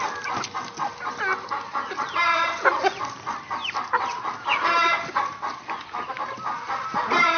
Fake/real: real